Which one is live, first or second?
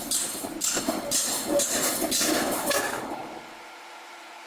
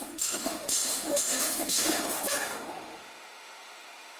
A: first